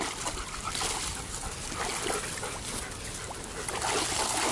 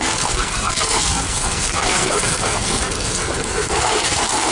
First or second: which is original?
first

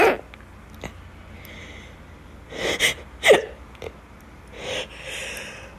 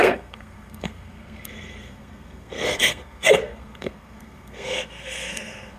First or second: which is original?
first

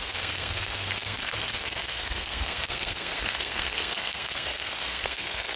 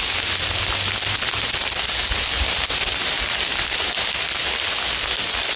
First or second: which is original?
second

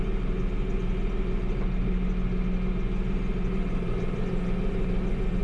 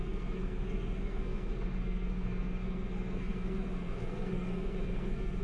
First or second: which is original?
first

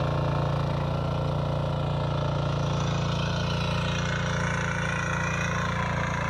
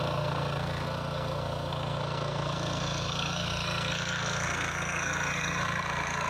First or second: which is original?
first